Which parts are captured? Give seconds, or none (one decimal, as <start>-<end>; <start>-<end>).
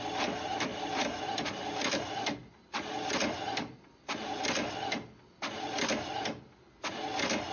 none